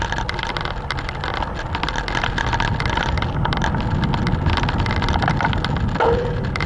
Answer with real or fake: real